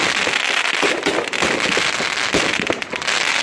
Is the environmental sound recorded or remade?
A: recorded